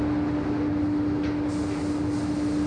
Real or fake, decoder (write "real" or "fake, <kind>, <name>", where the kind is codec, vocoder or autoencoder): real